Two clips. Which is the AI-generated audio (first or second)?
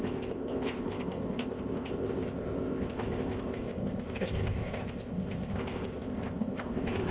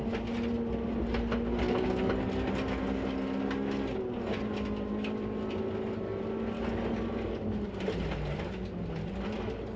first